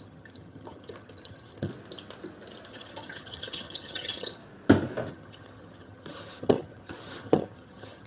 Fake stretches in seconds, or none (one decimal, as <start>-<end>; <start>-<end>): 0.0-1.7; 2.7-4.4; 5.1-8.1